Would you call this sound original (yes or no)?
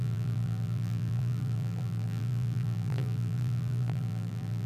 no